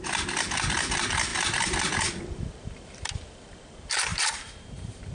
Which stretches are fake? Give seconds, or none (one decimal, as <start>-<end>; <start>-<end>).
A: 4.1-5.1